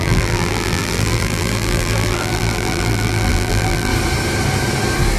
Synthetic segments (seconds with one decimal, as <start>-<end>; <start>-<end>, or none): 0.0-3.9